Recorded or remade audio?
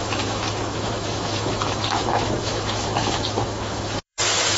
remade